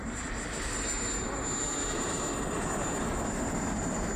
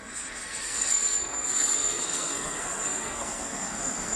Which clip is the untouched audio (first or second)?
first